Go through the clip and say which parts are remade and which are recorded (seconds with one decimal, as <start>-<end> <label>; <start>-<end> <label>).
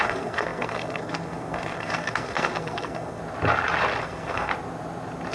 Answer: 0.0-3.2 remade; 3.2-4.0 recorded; 4.0-4.5 remade; 4.5-5.3 recorded